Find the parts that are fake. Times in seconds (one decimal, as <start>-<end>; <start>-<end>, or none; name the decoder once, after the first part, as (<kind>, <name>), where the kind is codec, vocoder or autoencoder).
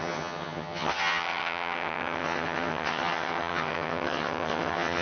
0.0-5.0 (vocoder, HiFi-GAN)